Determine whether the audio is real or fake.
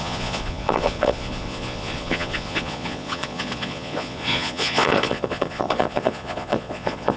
fake